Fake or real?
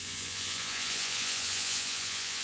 fake